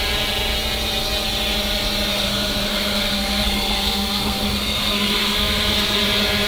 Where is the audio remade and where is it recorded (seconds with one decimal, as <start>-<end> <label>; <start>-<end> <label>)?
0.0-2.1 recorded; 2.1-6.0 remade; 6.0-6.5 recorded